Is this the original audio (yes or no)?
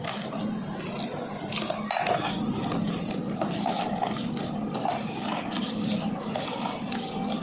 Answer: yes